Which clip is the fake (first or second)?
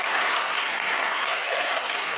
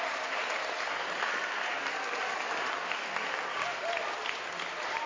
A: first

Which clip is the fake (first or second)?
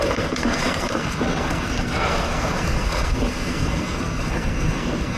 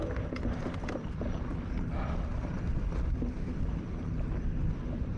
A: first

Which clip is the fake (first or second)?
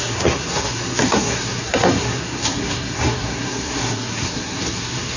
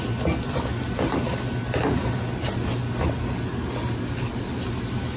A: first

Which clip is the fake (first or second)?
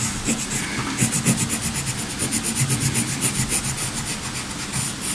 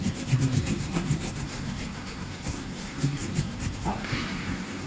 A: second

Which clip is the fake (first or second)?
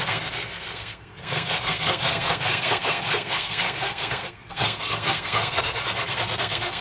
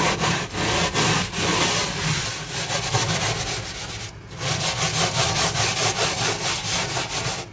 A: first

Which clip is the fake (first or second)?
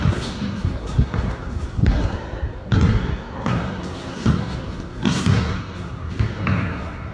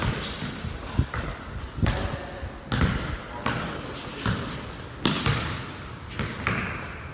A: first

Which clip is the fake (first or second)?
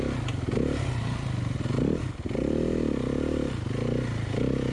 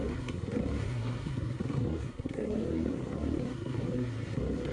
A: second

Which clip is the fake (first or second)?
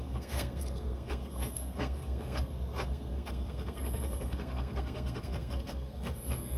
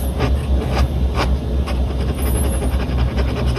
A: first